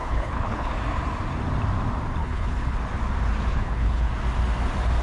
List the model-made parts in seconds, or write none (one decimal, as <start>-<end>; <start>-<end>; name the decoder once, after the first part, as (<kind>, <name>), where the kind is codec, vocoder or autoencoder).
0.0-0.7 (codec, HILCodec); 2.2-2.8; 3.5-4.1